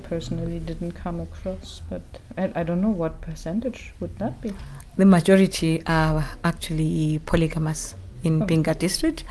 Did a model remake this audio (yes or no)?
no